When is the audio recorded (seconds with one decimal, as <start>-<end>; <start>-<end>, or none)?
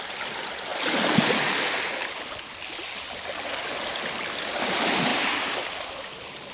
0.0-6.5